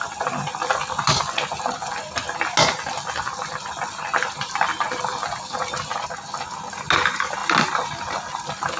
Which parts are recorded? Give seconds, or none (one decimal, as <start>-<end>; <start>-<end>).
0.0-8.8